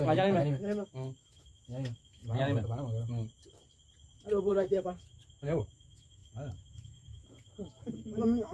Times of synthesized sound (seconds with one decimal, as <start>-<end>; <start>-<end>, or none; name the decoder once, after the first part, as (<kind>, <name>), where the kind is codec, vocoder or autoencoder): 0.0-2.2 (autoencoder, DAC-VAE); 4.5-8.5